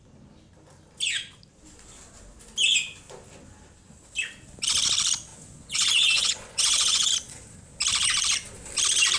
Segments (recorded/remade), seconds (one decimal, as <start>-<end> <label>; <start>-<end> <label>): 0.0-5.3 recorded; 5.3-7.1 remade; 7.1-9.2 recorded